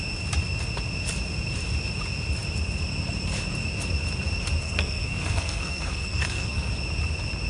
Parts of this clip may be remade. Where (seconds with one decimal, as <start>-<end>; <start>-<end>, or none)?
4.6-6.7